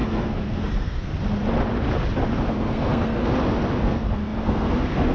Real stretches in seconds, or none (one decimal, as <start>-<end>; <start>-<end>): 1.1-2.5; 3.3-3.8